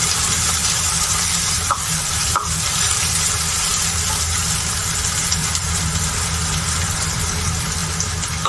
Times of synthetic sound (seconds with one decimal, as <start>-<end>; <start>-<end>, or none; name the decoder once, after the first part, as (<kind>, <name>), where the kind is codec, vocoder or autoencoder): 0.6-3.0 (vocoder, BigVGAN v2); 5.4-6.3